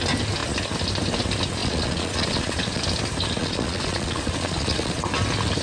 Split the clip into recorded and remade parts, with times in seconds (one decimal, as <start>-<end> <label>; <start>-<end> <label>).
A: 0.0-1.6 recorded; 1.6-2.8 remade; 2.8-3.4 recorded; 3.4-5.0 remade; 5.0-5.6 recorded